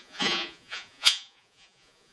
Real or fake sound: fake